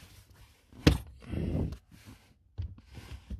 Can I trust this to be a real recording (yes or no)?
yes